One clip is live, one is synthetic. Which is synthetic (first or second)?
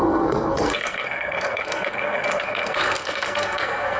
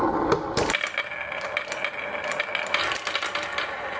first